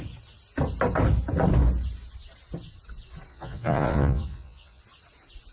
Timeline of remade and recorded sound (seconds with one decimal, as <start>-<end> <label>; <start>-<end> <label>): 0.0-3.3 recorded; 3.3-4.8 remade; 4.8-5.5 recorded